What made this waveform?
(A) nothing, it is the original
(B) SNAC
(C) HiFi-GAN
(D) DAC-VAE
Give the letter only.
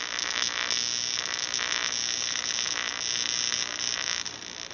A